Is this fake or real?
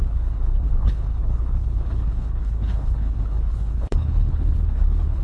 fake